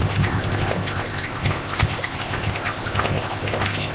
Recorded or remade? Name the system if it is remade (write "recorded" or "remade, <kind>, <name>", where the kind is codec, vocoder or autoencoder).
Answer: remade, codec, ZipCodec